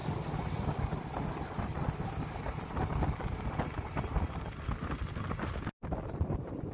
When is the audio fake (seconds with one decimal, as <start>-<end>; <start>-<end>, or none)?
none